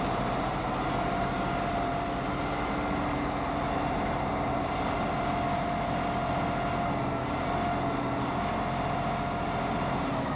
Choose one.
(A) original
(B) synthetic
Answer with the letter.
A